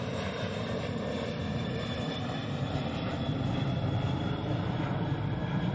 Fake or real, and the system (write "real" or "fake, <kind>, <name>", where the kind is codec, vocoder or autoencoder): fake, vocoder, BigVGAN v2